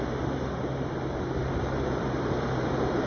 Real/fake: fake